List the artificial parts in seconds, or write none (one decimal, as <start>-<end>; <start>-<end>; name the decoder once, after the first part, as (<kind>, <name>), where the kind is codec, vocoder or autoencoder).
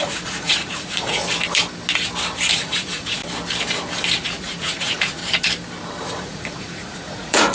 0.0-1.2 (vocoder, Vocos); 2.5-3.2; 4.2-5.2; 6.0-7.5